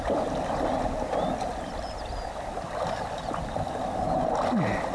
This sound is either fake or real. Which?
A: real